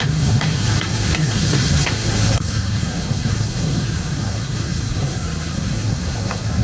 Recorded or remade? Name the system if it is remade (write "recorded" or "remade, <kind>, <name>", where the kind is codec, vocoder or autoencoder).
remade, codec, SNAC